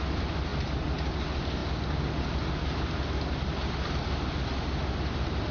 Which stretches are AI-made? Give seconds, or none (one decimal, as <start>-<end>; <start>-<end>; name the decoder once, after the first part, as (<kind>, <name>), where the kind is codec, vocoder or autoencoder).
none